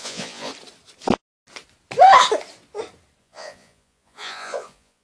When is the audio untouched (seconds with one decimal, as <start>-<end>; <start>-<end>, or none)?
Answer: 0.5-3.2

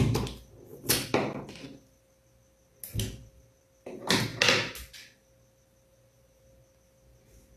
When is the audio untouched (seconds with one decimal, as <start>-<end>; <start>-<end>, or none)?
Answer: 0.0-7.6

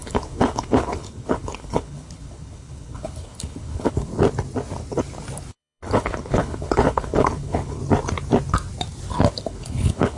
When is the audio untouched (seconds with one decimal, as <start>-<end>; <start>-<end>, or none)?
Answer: 4.1-5.5; 7.8-9.4